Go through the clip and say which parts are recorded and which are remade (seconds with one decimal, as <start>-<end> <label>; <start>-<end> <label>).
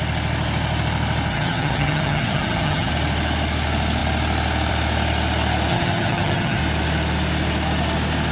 0.0-1.3 recorded; 1.3-2.9 remade; 2.9-5.7 recorded; 5.7-6.6 remade; 6.6-8.3 recorded